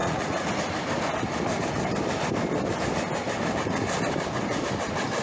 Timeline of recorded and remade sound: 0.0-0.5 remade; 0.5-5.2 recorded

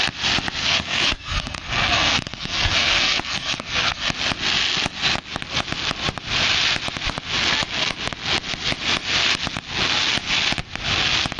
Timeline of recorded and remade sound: 0.0-0.6 recorded; 0.6-4.1 remade; 4.1-11.4 recorded

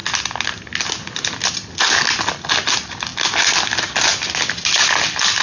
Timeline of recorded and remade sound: 0.0-5.4 recorded

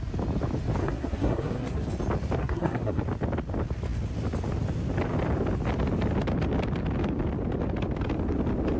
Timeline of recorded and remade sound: 0.0-0.8 recorded; 0.8-1.9 remade; 1.9-2.4 recorded; 2.4-3.0 remade; 3.0-8.8 recorded

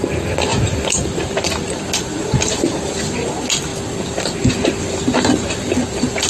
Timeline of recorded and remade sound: 0.0-6.3 recorded

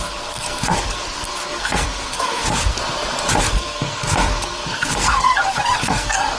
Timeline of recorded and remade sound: 0.0-2.8 remade; 2.8-3.4 recorded; 3.4-6.4 remade